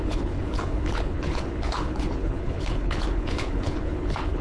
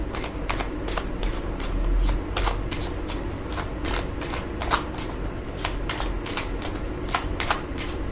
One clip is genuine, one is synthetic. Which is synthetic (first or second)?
first